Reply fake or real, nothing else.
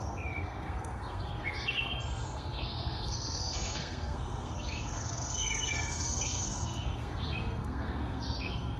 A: fake